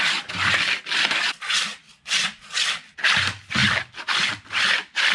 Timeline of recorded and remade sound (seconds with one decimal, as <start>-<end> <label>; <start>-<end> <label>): 0.0-5.1 recorded